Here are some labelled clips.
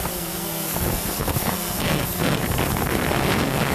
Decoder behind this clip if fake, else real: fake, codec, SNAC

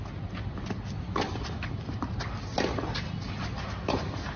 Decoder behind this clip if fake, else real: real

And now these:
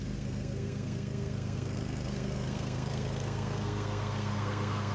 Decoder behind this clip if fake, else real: fake, codec, SNAC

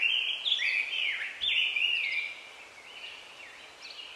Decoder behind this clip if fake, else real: real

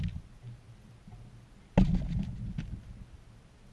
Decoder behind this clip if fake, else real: real